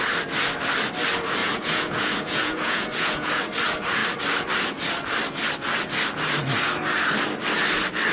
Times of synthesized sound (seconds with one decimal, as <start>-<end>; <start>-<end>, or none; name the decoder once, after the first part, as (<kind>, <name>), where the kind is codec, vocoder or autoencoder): 1.4-3.4 (vocoder, Vocos)